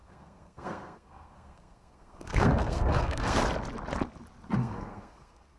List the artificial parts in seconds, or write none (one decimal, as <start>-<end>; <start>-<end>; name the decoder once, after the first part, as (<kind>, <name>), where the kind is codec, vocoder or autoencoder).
0.0-3.4 (codec, SNAC); 4.6-5.6